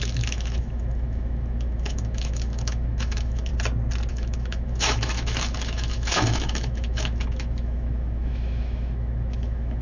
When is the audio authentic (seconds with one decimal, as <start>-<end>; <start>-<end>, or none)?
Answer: 3.5-4.1